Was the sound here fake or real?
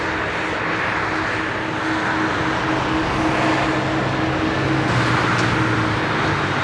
real